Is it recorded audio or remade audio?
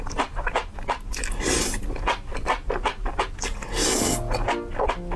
recorded